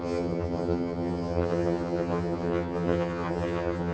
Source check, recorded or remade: remade